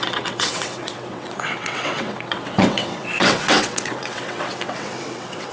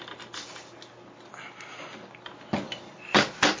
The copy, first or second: first